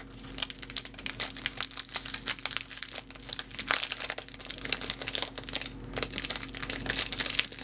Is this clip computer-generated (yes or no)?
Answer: no